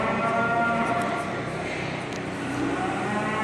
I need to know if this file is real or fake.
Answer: real